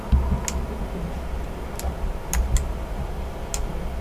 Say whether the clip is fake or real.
real